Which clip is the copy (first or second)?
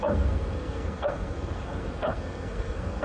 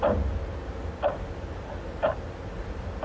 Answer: first